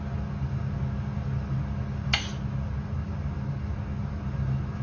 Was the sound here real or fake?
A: real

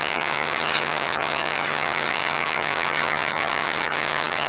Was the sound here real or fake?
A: fake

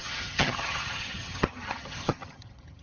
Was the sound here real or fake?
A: fake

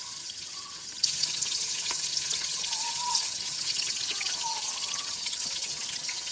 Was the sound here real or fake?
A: fake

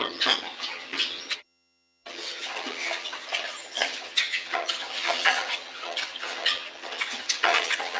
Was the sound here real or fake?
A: fake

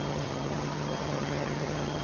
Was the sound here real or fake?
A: fake